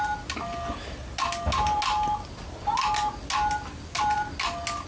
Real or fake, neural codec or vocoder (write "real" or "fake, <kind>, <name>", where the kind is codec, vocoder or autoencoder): real